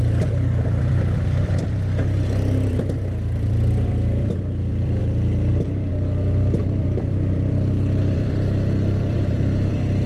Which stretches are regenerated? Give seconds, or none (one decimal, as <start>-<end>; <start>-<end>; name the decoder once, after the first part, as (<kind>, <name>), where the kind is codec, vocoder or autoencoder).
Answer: 0.0-5.0 (vocoder, BigVGAN v2); 5.9-10.1